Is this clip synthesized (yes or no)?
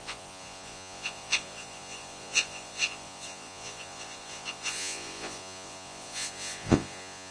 yes